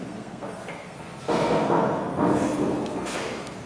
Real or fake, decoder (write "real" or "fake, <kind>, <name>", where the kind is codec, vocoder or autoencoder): fake, codec, SNAC